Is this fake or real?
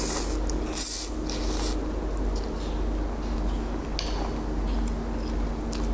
real